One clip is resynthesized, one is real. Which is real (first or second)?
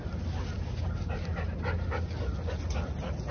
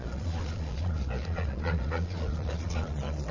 first